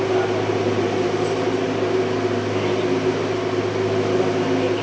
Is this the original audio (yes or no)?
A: yes